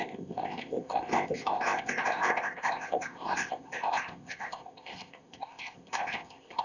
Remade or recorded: remade